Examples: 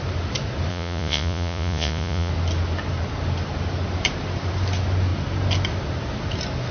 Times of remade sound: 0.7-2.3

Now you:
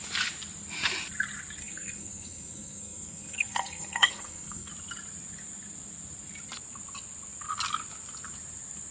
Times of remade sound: 1.6-4.7

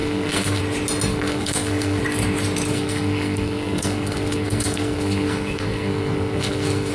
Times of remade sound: 0.0-0.6; 1.1-2.0; 2.7-6.9

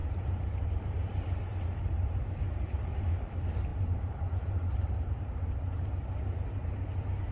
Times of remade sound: none

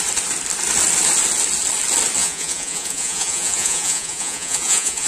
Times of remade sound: 2.2-5.1